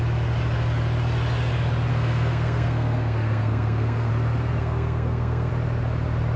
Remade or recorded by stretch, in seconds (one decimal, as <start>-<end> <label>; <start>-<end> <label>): 0.0-1.9 recorded; 1.9-4.1 remade; 4.1-4.6 recorded; 4.6-5.5 remade; 5.5-6.4 recorded